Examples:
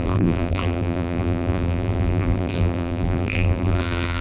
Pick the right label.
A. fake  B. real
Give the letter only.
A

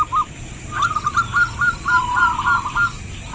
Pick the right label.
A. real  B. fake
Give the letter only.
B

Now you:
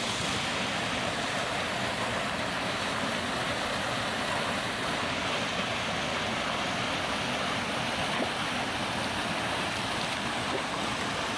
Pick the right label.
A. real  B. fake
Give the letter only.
A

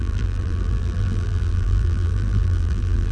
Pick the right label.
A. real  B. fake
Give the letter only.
B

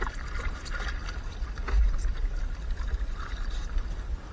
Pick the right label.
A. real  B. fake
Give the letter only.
A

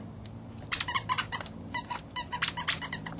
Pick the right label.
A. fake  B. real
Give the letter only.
A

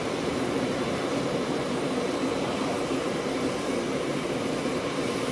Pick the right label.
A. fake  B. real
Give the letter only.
A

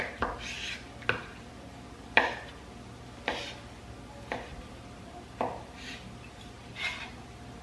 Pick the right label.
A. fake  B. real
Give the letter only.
B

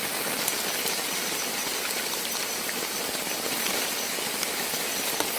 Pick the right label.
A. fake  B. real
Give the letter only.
B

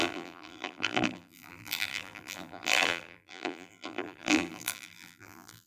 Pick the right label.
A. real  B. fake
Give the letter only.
B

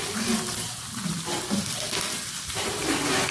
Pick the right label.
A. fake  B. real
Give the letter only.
B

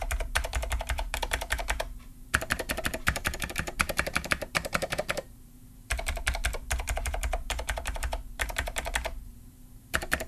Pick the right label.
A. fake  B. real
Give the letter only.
A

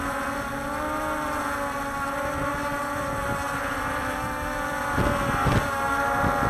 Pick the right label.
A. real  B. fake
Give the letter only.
A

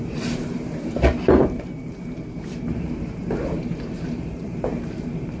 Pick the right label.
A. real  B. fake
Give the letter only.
B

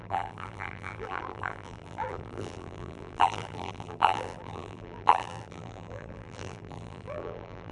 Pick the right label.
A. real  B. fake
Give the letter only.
B